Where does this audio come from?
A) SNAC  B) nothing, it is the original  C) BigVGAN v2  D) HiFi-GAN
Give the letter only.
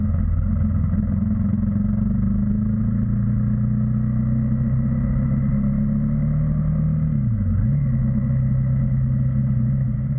B